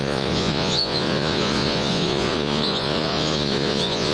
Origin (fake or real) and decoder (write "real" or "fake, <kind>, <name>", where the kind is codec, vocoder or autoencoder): fake, vocoder, Vocos